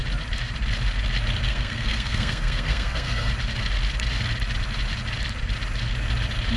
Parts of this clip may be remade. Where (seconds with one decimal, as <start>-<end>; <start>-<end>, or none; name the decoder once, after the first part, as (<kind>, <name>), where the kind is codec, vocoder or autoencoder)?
1.5-3.3 (codec, SNAC)